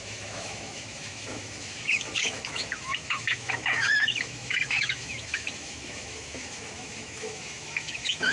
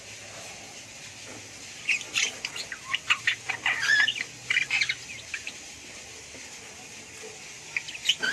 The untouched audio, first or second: second